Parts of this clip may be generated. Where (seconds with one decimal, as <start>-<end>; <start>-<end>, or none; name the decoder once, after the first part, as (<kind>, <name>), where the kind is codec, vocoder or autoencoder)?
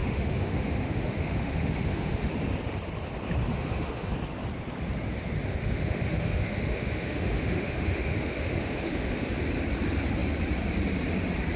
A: 0.0-2.3 (autoencoder, DAC-VAE); 3.5-4.1; 5.5-9.4